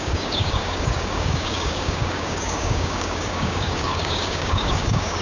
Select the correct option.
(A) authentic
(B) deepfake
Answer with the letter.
B